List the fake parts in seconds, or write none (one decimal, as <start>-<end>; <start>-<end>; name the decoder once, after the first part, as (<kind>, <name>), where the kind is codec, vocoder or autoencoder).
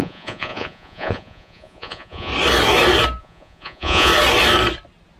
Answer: 0.0-2.3 (vocoder, Vocos); 3.2-4.1